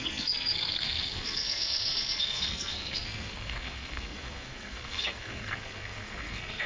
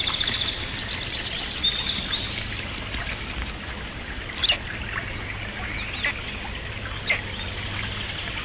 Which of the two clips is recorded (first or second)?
second